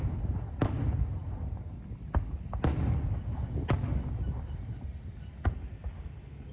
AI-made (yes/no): no